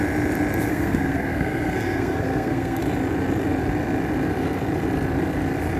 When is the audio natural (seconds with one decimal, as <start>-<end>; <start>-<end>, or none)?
0.0-0.7; 2.8-5.8